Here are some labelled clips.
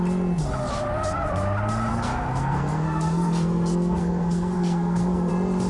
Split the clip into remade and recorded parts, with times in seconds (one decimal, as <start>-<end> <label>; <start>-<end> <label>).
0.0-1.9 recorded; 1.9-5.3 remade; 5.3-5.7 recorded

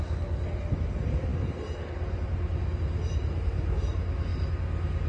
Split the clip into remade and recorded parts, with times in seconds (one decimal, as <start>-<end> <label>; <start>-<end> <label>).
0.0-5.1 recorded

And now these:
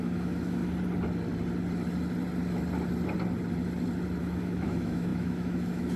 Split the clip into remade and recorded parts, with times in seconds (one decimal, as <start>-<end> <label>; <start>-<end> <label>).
0.0-0.6 remade; 0.6-4.2 recorded; 4.2-6.0 remade

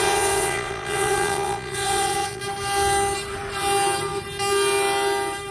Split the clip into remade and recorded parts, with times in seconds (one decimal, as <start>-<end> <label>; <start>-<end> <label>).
0.0-2.4 remade; 2.4-5.5 recorded